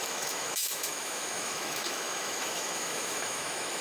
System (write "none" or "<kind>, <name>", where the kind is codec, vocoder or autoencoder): autoencoder, DAC-VAE